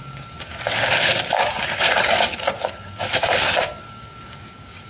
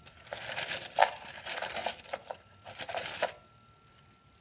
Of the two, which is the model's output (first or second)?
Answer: first